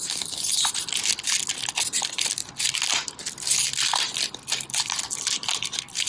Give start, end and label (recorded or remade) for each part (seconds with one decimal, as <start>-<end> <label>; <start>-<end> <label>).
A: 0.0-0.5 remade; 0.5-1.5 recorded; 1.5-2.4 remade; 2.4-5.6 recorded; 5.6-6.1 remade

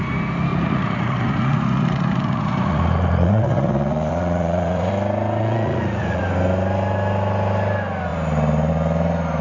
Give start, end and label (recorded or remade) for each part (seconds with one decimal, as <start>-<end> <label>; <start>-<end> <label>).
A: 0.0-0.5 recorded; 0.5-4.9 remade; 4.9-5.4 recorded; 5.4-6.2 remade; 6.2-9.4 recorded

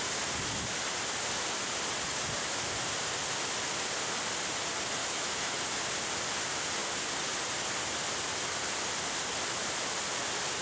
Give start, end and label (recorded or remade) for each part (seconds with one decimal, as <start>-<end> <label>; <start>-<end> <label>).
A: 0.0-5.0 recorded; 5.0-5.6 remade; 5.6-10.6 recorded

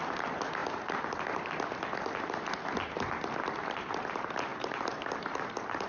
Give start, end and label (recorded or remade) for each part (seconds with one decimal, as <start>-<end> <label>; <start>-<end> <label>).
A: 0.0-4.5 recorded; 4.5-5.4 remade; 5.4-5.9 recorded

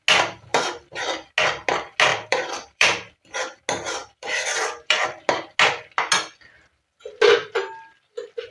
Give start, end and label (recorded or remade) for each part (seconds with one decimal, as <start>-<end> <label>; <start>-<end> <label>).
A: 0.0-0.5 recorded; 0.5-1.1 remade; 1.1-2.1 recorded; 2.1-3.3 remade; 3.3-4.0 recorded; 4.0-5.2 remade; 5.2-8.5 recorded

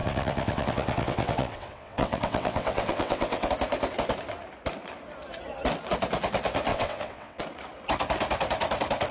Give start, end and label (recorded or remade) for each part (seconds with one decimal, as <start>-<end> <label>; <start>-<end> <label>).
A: 0.0-3.5 remade; 3.5-6.7 recorded; 6.7-7.4 remade; 7.4-9.1 recorded